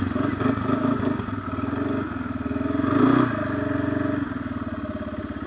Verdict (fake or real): real